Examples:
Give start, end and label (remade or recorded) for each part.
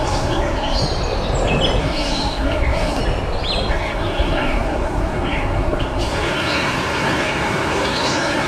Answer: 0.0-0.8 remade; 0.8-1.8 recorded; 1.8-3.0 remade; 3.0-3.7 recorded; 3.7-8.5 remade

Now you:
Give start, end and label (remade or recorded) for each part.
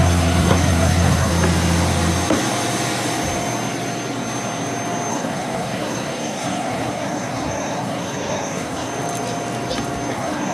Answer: 0.0-1.3 remade; 1.3-5.1 recorded; 5.1-8.9 remade; 8.9-10.1 recorded; 10.1-10.5 remade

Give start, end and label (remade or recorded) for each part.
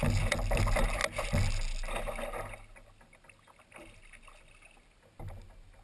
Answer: 0.0-5.8 recorded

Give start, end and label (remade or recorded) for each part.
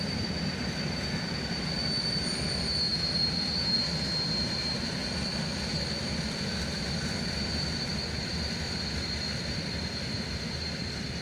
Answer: 0.0-2.9 recorded; 2.9-3.8 remade; 3.8-6.0 recorded; 6.0-7.9 remade; 7.9-8.3 recorded; 8.3-9.7 remade; 9.7-11.2 recorded